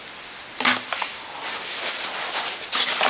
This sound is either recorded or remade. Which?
recorded